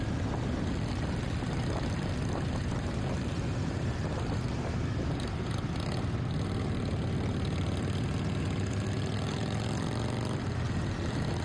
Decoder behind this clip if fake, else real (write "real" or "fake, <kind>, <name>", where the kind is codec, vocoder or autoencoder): real